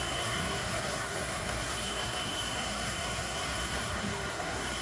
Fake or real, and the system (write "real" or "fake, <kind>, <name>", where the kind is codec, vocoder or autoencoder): fake, codec, SNAC